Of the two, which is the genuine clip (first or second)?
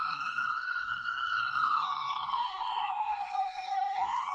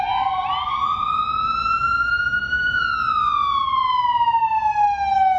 second